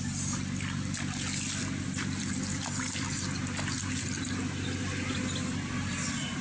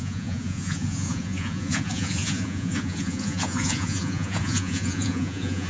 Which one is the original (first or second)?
first